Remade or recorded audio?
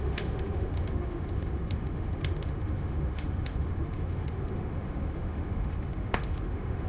remade